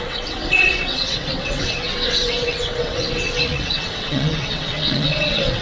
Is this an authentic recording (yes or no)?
no